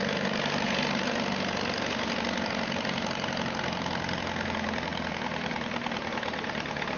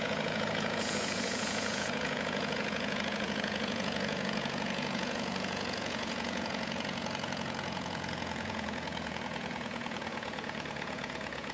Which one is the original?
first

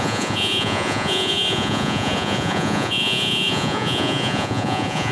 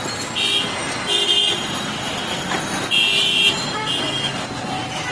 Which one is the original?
second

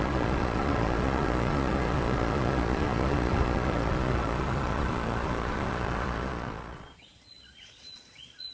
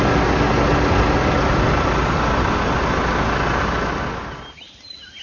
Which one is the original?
second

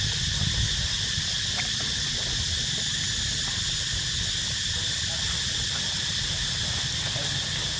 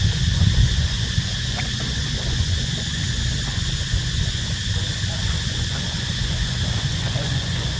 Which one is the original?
first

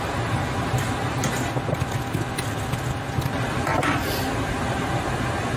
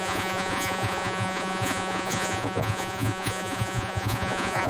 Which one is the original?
first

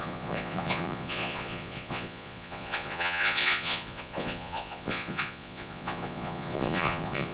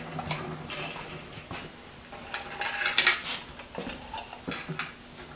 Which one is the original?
second